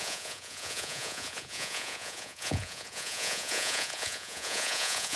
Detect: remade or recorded remade